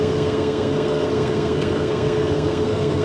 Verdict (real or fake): fake